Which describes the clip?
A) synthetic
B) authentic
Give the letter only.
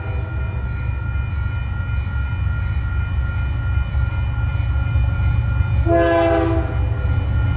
B